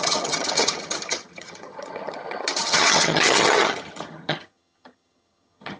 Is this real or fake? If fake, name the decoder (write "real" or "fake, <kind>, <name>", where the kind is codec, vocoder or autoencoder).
fake, vocoder, HiFi-GAN